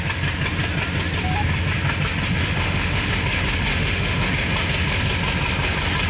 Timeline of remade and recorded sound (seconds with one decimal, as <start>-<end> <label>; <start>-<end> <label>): 0.0-2.4 recorded; 2.4-3.1 remade; 3.1-3.7 recorded; 3.7-4.3 remade; 4.3-6.1 recorded